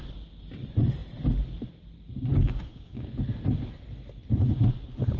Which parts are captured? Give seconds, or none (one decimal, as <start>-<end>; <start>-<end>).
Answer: 0.0-2.3; 3.1-5.2